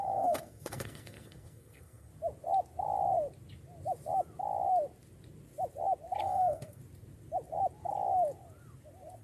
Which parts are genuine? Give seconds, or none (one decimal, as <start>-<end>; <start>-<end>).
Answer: 2.1-6.2; 6.8-9.2